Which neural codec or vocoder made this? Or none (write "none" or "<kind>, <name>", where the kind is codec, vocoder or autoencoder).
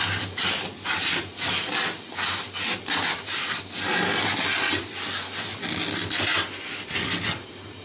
none